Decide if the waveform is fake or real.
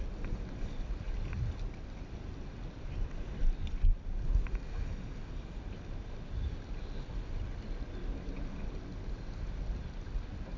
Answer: real